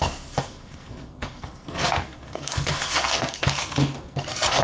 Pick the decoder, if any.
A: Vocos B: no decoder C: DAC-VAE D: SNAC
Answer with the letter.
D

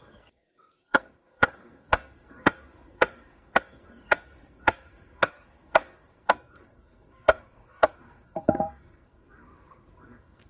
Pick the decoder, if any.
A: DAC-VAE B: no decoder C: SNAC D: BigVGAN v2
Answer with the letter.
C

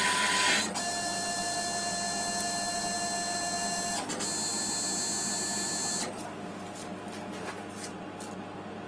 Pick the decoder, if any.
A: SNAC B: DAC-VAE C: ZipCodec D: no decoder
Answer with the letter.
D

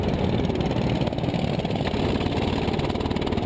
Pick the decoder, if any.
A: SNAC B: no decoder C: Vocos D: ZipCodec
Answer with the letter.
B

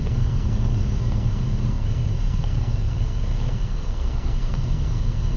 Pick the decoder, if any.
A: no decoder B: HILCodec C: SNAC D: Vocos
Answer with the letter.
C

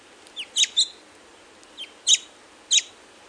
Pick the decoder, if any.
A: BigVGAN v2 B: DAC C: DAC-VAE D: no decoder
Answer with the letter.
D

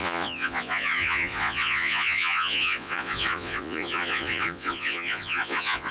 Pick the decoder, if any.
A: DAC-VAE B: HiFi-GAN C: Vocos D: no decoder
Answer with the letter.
C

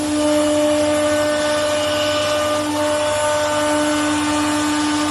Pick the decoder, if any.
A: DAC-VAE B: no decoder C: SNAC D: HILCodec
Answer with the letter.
B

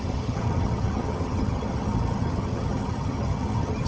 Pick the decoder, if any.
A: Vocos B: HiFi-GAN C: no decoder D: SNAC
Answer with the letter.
B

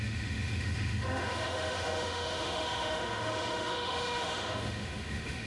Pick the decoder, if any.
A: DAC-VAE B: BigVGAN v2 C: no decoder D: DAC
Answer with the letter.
A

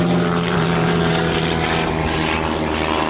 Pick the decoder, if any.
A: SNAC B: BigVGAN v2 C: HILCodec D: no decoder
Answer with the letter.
B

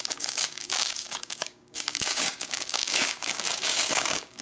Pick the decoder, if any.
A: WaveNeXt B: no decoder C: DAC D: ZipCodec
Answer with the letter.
C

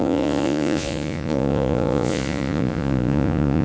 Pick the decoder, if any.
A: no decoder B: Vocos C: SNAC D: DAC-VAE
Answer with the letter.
B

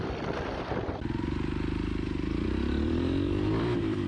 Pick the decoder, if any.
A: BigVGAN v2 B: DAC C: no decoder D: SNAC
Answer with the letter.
A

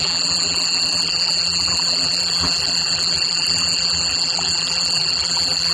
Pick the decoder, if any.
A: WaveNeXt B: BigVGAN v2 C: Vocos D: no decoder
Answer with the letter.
B